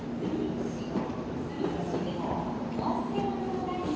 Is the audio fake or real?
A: real